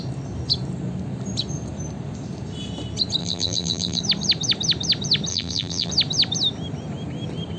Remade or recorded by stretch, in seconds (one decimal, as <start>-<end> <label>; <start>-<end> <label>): 0.0-3.2 recorded; 3.2-4.0 remade; 4.0-5.3 recorded; 5.3-5.9 remade; 5.9-7.6 recorded